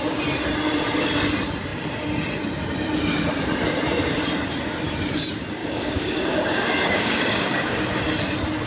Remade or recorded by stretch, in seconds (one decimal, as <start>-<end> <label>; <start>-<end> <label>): 0.0-5.6 recorded; 5.6-7.9 remade; 7.9-8.7 recorded